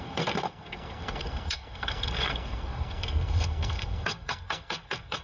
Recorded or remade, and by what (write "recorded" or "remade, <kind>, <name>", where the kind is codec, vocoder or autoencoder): remade, codec, SNAC